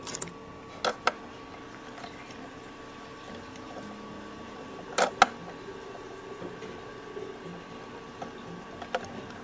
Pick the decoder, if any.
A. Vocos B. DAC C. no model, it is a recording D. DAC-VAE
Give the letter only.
C